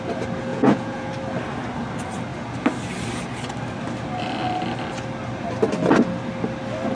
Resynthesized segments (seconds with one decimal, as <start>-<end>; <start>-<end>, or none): 0.5-1.1